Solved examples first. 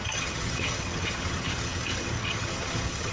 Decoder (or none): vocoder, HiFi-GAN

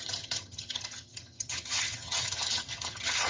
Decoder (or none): vocoder, HiFi-GAN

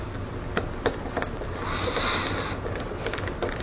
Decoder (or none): none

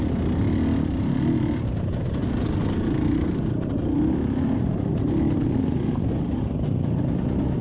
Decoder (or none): none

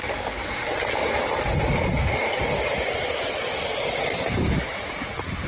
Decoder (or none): none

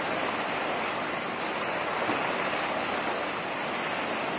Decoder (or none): none